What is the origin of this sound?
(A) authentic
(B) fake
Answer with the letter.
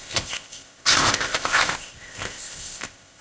B